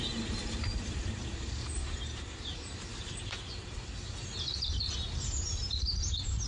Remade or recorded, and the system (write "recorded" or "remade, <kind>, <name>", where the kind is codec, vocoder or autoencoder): remade, vocoder, BigVGAN v2